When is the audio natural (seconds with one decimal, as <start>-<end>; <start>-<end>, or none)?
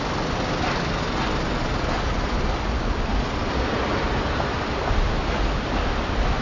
0.0-6.4